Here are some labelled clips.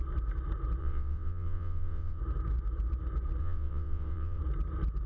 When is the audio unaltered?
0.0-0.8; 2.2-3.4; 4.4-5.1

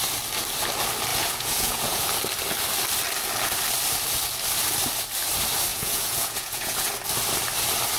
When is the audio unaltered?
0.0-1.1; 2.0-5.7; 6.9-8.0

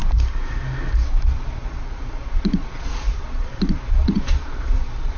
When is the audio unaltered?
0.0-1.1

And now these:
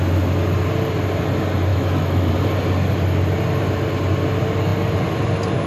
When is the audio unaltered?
0.0-1.7; 2.3-5.7

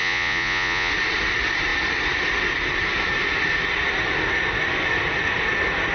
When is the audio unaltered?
0.9-5.9